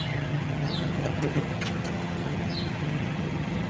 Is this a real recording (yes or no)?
no